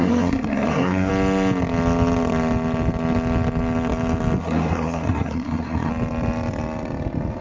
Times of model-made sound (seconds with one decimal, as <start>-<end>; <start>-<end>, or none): 0.0-1.1; 4.4-5.9